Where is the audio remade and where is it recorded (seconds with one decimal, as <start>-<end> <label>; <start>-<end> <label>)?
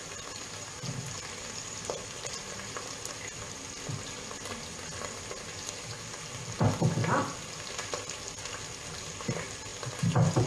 0.0-10.5 recorded